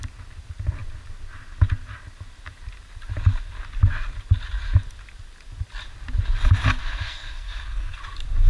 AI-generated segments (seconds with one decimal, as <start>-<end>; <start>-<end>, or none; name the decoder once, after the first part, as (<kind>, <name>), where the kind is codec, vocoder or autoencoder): 6.8-8.0 (codec, SNAC)